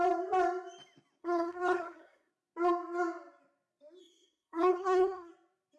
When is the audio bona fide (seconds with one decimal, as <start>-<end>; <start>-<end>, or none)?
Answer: 0.0-1.2; 2.3-4.0; 5.3-5.8

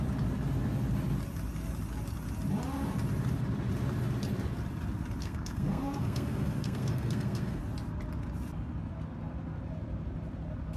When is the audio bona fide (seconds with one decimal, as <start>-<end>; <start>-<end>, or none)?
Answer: 0.0-5.2; 7.6-10.8

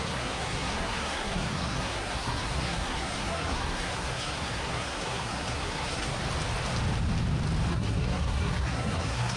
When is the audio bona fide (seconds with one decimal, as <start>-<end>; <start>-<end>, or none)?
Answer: 6.2-7.7

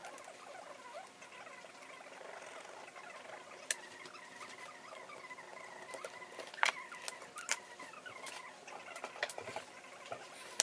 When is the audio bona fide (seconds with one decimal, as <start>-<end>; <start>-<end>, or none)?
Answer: 0.0-10.6

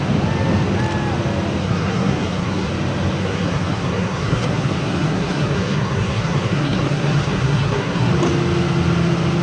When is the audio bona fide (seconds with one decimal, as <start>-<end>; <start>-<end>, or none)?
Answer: 0.0-1.6; 2.7-3.2; 8.1-9.4

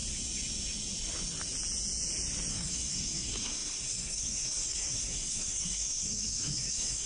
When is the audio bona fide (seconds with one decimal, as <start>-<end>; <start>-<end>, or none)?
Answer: 0.0-2.5